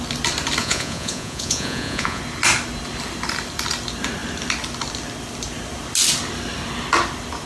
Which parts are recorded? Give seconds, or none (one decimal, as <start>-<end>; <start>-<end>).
0.0-0.6; 2.2-7.5

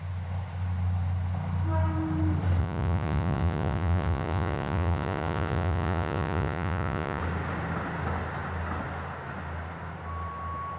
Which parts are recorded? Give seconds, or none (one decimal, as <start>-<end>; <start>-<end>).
0.0-2.6; 7.2-10.8